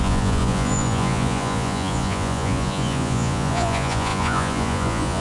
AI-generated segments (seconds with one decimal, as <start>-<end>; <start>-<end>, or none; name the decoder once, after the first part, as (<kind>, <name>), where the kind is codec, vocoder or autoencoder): 0.0-5.2 (vocoder, Vocos)